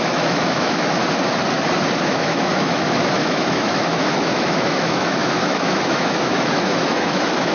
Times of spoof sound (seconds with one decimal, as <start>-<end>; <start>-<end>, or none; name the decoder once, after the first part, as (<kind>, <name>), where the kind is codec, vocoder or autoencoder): 0.0-1.0 (autoencoder, DAC-VAE); 2.0-7.5